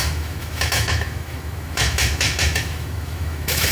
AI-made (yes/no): yes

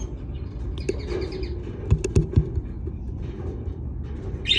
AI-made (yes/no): no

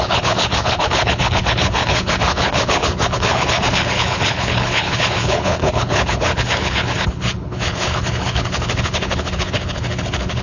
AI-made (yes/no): yes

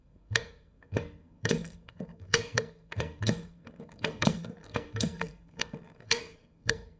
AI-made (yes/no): yes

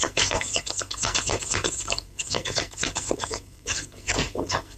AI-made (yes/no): yes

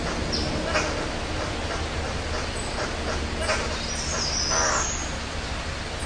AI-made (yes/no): no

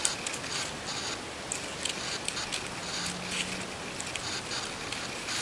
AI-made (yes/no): no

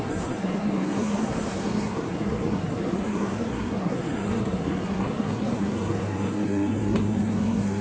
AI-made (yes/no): yes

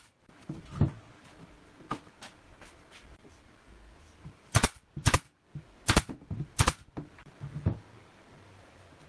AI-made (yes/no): no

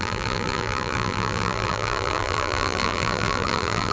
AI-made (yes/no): yes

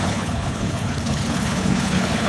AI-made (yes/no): yes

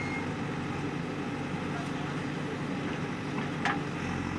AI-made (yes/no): no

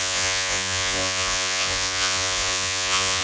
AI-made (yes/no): yes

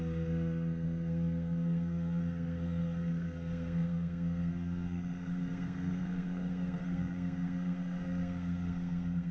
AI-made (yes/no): yes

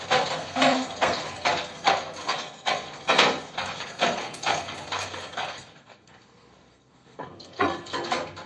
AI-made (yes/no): yes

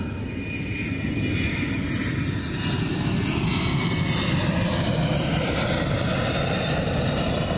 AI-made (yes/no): yes